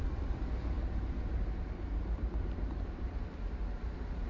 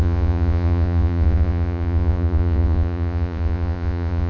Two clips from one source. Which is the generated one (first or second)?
second